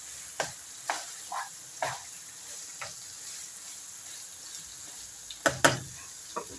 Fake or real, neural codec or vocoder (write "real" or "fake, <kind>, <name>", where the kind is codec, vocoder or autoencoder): real